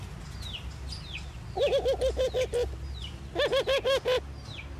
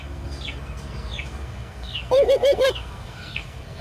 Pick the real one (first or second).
first